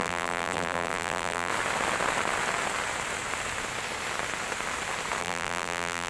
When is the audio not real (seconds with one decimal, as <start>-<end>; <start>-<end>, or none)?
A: 0.0-1.5; 5.2-6.1